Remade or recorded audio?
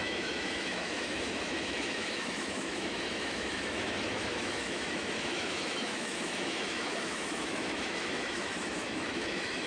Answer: remade